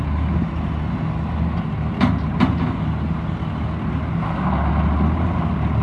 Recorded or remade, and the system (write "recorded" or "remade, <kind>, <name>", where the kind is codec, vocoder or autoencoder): recorded